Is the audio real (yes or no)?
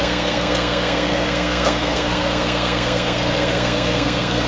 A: no